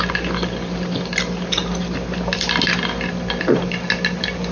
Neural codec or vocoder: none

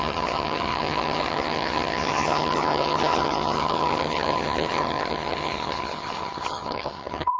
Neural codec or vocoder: vocoder, HiFi-GAN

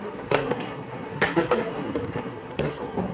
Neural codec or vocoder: codec, SNAC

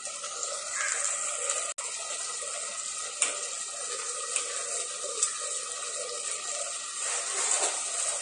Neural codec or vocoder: none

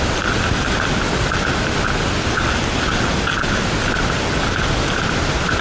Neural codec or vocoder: none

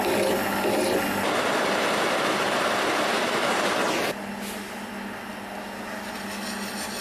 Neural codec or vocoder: none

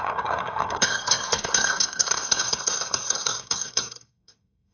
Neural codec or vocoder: codec, SNAC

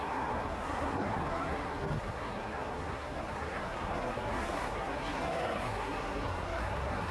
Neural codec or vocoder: codec, SNAC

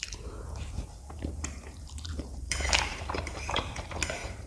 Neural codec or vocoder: vocoder, BigVGAN v2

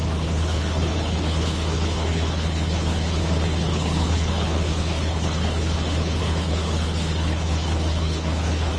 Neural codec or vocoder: codec, HILCodec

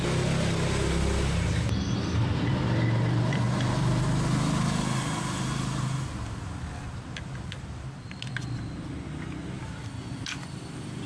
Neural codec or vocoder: none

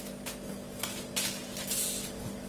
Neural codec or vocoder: none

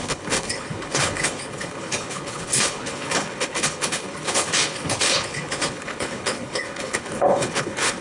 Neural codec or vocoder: codec, HILCodec